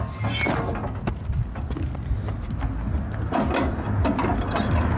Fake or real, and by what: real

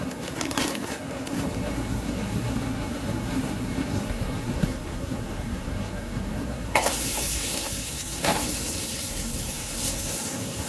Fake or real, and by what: fake, codec, SNAC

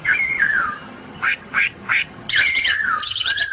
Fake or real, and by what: fake, vocoder, HiFi-GAN